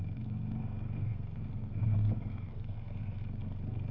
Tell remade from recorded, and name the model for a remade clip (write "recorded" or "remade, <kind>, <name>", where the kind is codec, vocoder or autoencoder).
remade, codec, SNAC